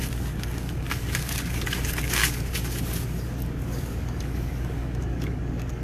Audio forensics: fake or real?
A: fake